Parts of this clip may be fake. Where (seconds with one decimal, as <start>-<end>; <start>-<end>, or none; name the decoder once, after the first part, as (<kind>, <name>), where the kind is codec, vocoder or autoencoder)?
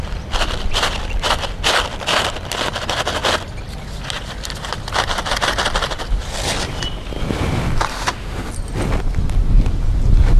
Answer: 7.9-8.5 (autoencoder, DAC-VAE)